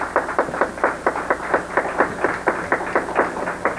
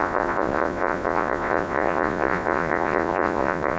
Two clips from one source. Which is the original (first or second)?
first